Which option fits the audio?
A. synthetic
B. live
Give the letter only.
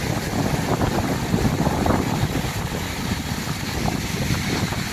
B